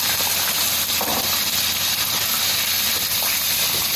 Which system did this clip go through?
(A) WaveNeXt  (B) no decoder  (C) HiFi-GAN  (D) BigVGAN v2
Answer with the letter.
B